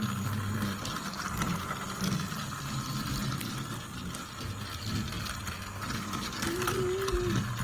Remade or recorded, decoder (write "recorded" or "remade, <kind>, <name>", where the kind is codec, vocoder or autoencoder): recorded